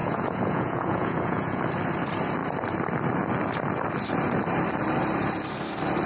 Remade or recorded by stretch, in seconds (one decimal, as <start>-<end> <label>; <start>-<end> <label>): 0.0-1.6 remade; 1.6-6.1 recorded